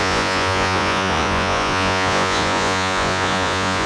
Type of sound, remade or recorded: remade